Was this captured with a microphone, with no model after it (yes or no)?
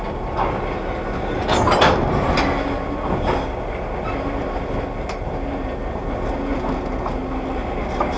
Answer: yes